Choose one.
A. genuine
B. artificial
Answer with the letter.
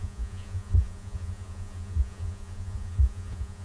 B